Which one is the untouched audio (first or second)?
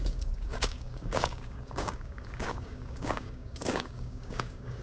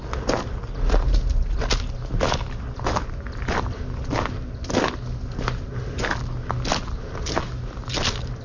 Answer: second